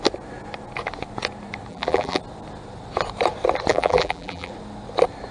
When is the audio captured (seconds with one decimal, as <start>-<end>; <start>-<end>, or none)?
0.0-1.7; 2.2-3.7; 4.5-5.3